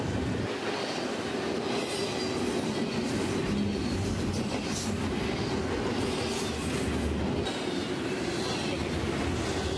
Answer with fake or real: real